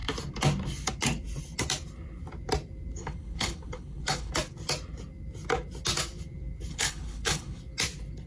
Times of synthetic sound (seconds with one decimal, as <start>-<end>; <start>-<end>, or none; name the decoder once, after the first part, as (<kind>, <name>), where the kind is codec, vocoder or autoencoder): 3.0-4.3 (codec, HILCodec); 6.7-7.6